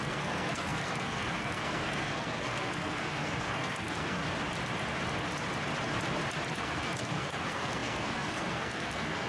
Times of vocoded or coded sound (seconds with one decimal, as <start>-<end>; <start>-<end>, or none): 0.0-4.2; 6.5-9.3